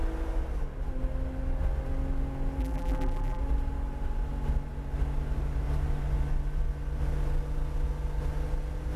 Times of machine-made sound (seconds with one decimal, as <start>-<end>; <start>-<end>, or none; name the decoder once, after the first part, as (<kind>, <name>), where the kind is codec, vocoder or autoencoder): 2.6-3.4 (vocoder, BigVGAN v2)